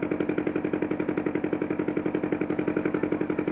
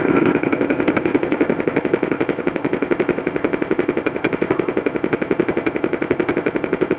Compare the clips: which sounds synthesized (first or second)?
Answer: second